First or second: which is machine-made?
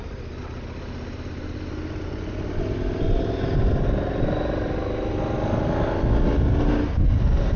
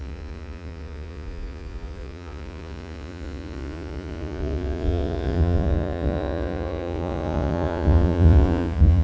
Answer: second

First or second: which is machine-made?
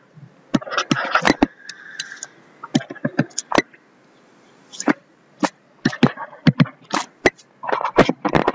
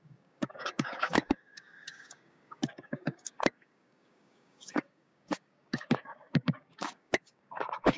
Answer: second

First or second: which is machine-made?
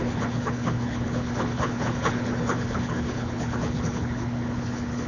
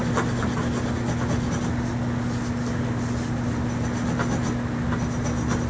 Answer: first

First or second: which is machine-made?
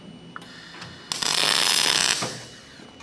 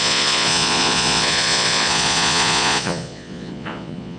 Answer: second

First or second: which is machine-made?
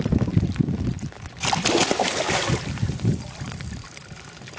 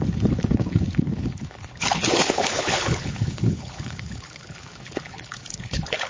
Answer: second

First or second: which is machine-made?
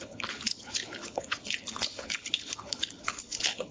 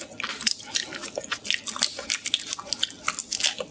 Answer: first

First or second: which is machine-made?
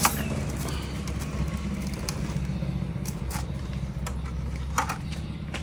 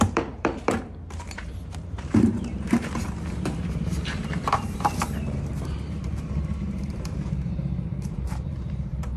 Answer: second